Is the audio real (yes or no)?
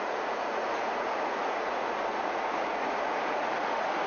no